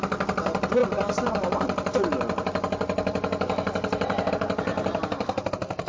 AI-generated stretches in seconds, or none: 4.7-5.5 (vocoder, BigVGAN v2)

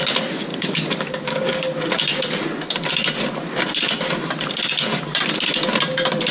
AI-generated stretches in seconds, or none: 0.5-1.8 (codec, DAC)

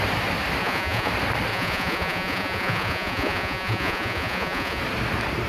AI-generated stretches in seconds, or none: 0.6-1.1 (vocoder, Vocos); 1.5-4.8

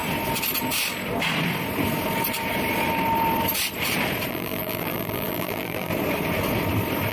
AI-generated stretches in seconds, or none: 4.3-5.9 (vocoder, BigVGAN v2)